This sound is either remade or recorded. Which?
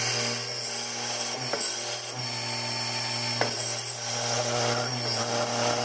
recorded